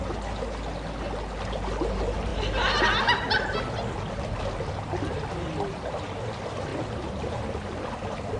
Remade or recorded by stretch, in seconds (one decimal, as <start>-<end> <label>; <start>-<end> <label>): 0.0-8.4 recorded